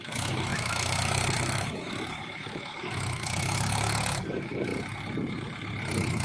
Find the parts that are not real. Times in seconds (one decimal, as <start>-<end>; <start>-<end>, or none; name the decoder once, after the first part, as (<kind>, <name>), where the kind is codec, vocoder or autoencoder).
0.0-4.7 (autoencoder, DAC-VAE)